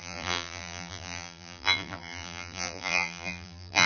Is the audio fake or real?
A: fake